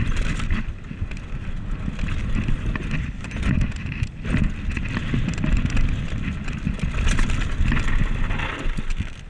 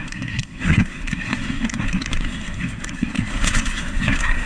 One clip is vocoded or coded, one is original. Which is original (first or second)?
first